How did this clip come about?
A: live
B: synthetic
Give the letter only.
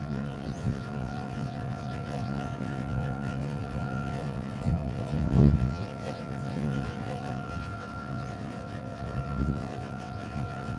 B